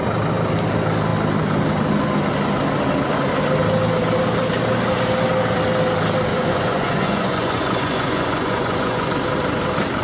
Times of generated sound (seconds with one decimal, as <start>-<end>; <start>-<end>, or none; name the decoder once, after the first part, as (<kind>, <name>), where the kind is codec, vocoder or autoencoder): 6.3-9.1 (vocoder, Vocos)